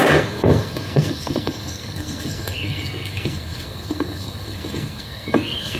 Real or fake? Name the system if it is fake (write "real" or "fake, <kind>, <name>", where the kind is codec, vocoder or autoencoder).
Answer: fake, codec, SNAC